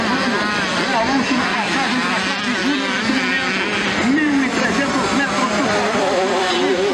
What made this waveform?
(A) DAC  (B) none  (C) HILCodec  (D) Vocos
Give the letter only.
B